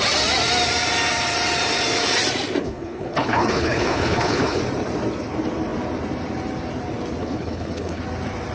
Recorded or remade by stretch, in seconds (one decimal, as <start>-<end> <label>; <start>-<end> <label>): 0.0-2.6 recorded; 2.6-4.6 remade; 4.6-7.2 recorded; 7.2-8.0 remade; 8.0-8.5 recorded